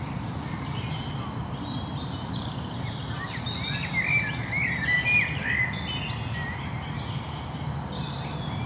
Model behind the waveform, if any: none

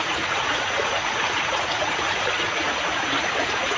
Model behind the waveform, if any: vocoder, Vocos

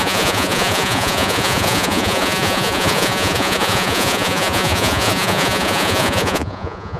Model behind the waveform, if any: vocoder, Vocos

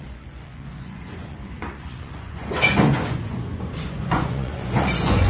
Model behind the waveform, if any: vocoder, Vocos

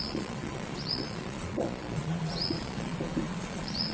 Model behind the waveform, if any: vocoder, Vocos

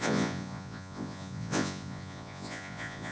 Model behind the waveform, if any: vocoder, Vocos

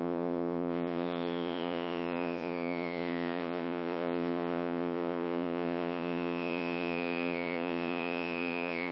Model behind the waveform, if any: vocoder, Vocos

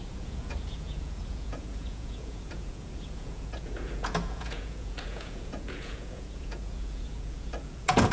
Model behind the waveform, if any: vocoder, Vocos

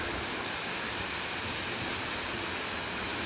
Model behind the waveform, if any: none